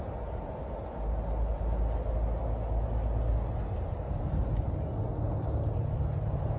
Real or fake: real